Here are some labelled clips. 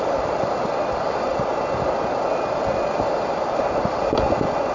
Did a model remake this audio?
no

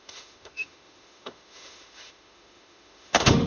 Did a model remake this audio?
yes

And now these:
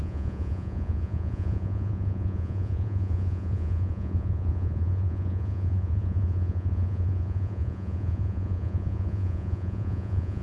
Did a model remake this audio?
yes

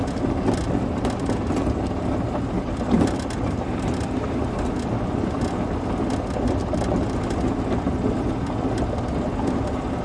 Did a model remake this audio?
no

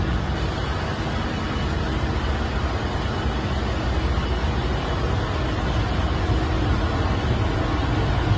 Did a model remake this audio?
no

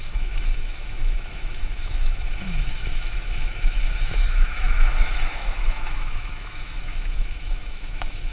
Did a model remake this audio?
yes